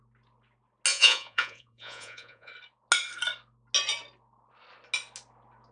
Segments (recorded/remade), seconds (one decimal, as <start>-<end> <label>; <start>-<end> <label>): 0.0-0.9 recorded; 0.9-2.5 remade; 2.5-5.7 recorded